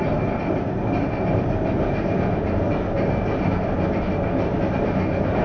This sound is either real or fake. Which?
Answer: real